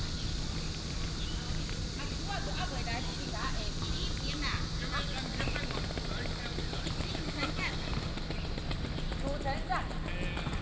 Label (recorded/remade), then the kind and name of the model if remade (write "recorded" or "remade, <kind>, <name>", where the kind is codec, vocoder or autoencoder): recorded